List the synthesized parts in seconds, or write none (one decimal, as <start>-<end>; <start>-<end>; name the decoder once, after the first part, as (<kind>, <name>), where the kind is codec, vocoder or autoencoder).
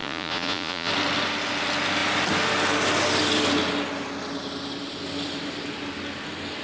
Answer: 0.0-0.9 (vocoder, Vocos)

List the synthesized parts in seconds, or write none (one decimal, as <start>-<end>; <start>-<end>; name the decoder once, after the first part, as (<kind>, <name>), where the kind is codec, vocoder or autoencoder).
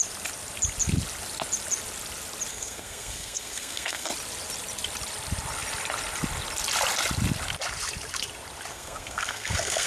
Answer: 2.5-4.1 (codec, SNAC); 8.7-9.9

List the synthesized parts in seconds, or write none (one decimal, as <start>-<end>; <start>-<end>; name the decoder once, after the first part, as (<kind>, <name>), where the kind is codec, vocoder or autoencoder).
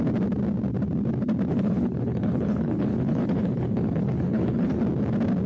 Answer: 1.5-4.8 (codec, HILCodec)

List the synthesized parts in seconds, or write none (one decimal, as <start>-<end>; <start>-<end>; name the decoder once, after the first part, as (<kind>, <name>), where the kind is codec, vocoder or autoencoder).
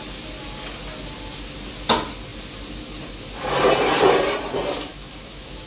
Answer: 4.9-5.7 (autoencoder, DAC-VAE)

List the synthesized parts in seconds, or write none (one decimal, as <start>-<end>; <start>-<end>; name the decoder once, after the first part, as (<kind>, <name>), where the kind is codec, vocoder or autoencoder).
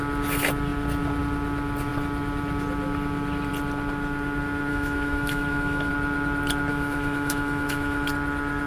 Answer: 4.7-5.9 (autoencoder, DAC-VAE); 6.7-8.1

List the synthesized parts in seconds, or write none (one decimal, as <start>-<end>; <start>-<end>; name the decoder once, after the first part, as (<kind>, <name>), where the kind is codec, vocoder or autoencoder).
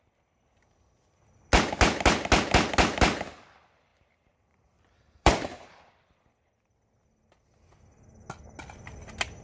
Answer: 3.9-5.9 (vocoder, BigVGAN v2)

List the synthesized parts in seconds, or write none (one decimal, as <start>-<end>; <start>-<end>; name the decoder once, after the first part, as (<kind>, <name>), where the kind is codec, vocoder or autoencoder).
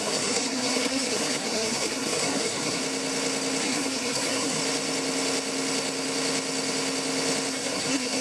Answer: 0.0-2.8 (codec, SNAC); 3.6-4.6; 7.5-8.2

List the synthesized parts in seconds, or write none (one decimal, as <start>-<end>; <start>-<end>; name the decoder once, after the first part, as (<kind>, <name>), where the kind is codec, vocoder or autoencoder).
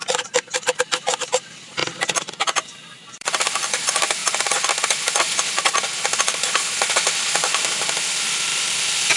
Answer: 1.8-3.7 (vocoder, BigVGAN v2); 8.5-9.2